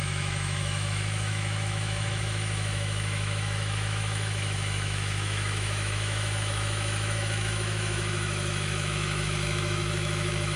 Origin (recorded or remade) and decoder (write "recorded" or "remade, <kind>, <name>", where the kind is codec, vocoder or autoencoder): remade, autoencoder, DAC-VAE